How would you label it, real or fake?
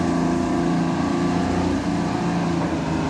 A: real